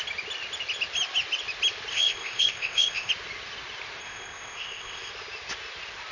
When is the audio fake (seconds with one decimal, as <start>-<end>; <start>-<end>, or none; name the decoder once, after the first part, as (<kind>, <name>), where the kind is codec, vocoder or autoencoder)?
1.9-3.1 (codec, ZipCodec); 4.0-5.1